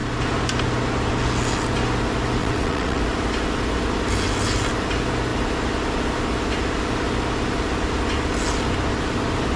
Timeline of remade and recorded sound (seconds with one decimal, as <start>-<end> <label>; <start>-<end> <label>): 0.0-2.4 recorded; 2.4-3.0 remade; 3.0-9.6 recorded